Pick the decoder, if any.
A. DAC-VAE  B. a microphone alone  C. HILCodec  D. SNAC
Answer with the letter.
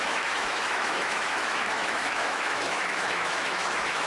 A